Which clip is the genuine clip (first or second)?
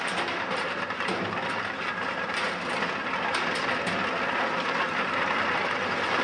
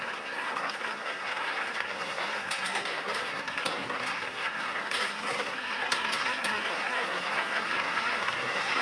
first